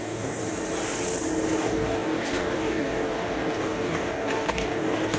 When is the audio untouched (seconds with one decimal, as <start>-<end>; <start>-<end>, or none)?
0.4-1.6